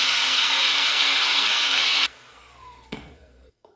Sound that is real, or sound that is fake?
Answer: fake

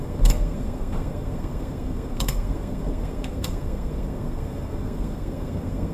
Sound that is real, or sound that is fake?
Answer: fake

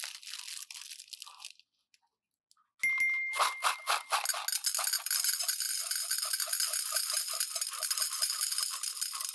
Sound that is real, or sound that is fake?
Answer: real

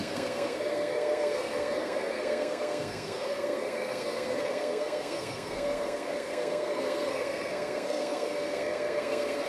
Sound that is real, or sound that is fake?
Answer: fake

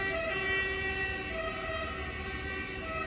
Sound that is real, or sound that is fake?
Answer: real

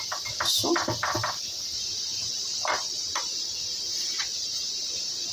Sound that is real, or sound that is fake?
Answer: real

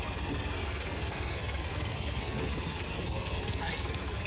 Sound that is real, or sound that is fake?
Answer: fake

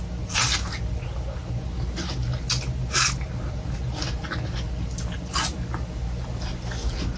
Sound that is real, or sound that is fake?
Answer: real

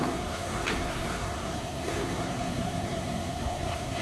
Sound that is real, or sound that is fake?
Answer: fake